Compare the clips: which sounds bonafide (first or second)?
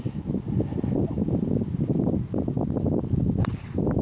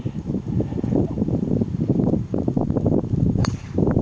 first